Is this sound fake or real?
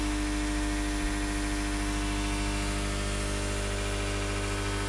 real